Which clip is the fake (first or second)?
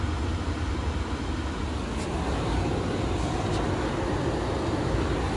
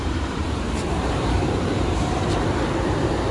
second